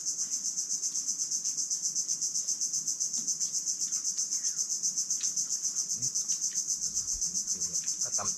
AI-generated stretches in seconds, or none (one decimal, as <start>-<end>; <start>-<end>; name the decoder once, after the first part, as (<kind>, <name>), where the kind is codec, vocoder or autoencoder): none